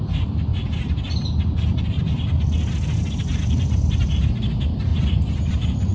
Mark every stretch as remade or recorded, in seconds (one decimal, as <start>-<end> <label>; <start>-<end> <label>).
0.0-0.5 remade; 0.5-3.5 recorded; 3.5-4.9 remade; 4.9-5.5 recorded; 5.5-5.9 remade

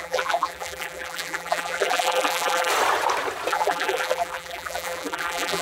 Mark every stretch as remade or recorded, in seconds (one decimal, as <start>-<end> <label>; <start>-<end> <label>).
0.0-2.7 remade; 2.7-3.5 recorded; 3.5-5.6 remade

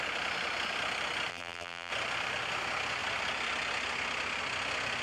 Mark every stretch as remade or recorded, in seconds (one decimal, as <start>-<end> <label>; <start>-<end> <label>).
0.0-1.3 recorded; 1.3-1.9 remade; 1.9-5.0 recorded

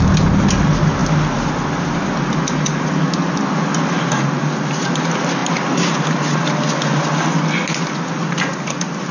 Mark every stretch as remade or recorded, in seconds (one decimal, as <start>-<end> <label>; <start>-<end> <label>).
0.0-9.1 recorded

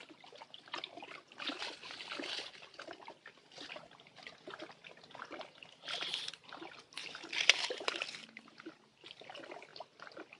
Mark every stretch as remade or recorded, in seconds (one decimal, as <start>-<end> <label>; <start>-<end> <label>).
0.0-10.4 recorded